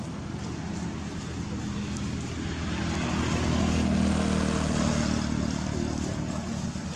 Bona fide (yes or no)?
yes